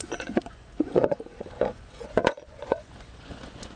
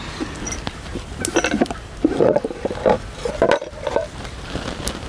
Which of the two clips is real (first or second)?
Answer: second